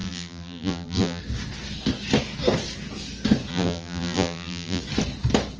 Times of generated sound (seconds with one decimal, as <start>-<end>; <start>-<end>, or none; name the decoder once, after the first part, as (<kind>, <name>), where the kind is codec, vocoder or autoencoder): 0.0-1.2 (vocoder, BigVGAN v2); 3.5-4.8